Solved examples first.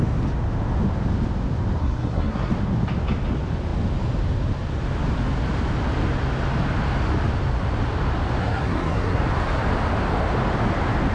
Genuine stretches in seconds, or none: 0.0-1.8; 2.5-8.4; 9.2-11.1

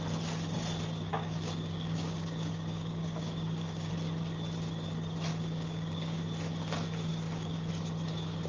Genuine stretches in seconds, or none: 0.0-1.1; 3.9-5.3; 6.2-7.1; 7.7-8.5

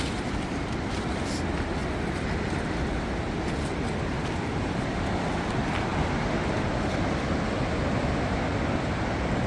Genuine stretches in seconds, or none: 0.0-9.5

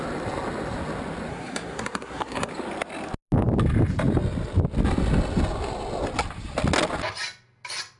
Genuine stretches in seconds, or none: 0.0-1.3; 2.5-8.0

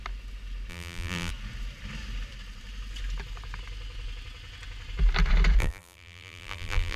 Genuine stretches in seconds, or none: 0.0-0.7; 1.3-5.6

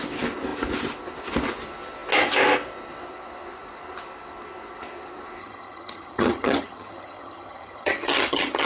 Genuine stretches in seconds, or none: 0.0-5.4

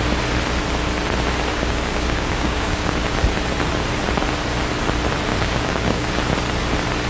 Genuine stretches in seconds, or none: 0.0-1.5; 3.0-5.3; 6.2-7.1

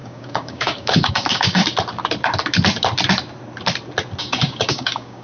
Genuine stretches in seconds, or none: 1.6-4.2